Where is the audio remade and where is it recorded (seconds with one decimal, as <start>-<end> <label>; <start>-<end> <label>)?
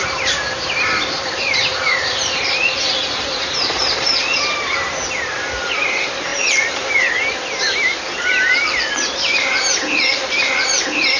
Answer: 0.0-2.4 remade; 2.4-3.2 recorded; 3.2-11.2 remade